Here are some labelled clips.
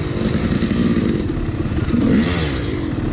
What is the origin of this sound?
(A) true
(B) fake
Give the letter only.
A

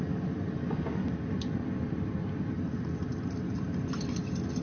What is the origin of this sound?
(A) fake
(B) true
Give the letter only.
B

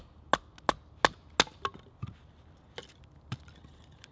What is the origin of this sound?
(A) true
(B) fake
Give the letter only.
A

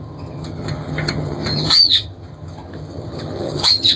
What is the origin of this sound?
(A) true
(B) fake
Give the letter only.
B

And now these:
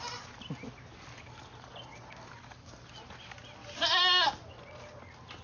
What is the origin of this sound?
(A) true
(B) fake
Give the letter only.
A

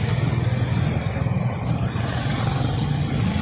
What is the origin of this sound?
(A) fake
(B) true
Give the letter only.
B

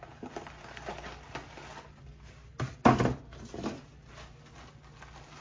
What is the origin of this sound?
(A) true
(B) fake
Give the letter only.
A